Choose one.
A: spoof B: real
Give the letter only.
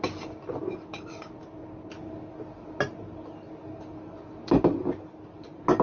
B